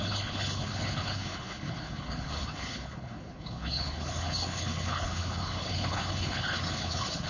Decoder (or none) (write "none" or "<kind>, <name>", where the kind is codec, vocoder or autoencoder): codec, HILCodec